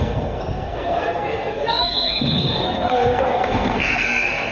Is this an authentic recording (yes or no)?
no